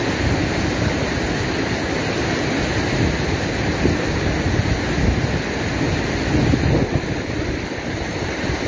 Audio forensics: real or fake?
real